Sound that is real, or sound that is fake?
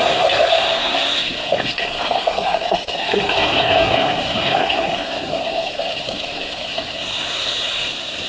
fake